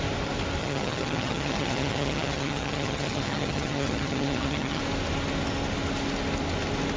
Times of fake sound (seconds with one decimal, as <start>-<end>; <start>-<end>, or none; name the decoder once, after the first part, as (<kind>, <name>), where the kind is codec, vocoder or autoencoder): 0.6-4.8 (vocoder, HiFi-GAN)

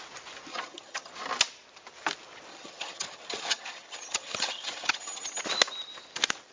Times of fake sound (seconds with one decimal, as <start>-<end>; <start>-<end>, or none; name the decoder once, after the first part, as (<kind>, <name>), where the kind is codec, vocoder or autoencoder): 0.5-1.1 (vocoder, HiFi-GAN); 2.5-5.4

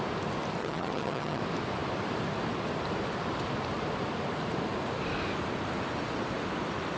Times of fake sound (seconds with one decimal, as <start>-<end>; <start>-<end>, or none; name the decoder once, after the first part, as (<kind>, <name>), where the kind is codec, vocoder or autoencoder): 0.6-1.4 (vocoder, HiFi-GAN)

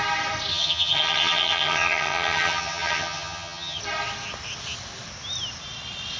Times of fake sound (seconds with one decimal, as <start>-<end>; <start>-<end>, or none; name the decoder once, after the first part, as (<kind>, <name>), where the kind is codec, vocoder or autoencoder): 0.5-3.8 (vocoder, HiFi-GAN)

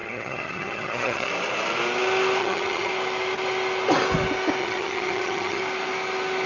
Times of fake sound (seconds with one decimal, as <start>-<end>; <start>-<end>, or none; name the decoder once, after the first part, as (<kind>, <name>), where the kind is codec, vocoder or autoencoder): 0.0-1.3 (vocoder, HiFi-GAN); 2.4-2.9; 4.6-5.6

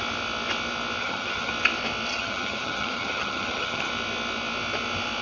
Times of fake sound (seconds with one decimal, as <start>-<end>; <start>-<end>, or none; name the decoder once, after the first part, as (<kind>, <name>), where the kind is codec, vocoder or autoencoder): 1.0-1.5 (vocoder, HiFi-GAN); 2.1-3.9